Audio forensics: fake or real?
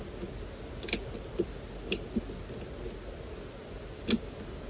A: real